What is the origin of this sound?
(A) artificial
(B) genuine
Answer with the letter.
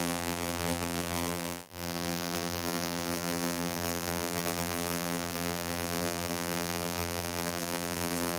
A